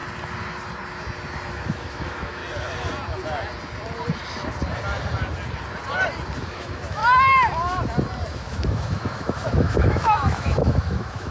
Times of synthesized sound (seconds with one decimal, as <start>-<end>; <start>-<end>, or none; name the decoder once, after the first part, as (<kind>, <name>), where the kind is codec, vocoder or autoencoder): 1.5-2.4 (autoencoder, DAC-VAE); 6.4-7.0; 8.3-11.3